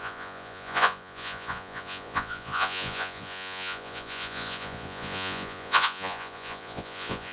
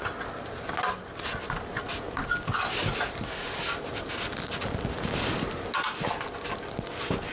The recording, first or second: second